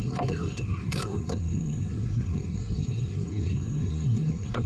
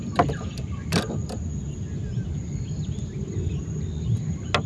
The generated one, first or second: first